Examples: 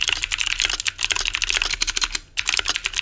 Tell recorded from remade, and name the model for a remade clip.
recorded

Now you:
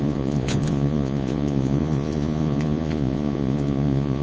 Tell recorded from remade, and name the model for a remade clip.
remade, vocoder, Vocos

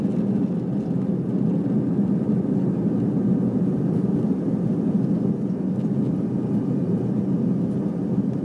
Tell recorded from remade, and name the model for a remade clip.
recorded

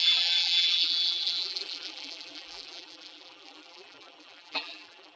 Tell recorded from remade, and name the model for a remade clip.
remade, vocoder, BigVGAN v2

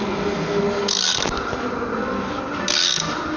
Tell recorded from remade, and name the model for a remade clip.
recorded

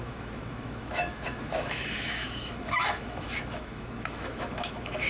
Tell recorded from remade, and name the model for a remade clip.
remade, autoencoder, DAC-VAE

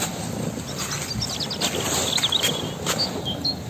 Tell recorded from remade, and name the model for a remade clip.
recorded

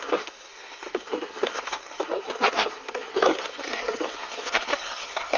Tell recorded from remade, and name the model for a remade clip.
remade, codec, SNAC